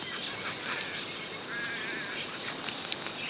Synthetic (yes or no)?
no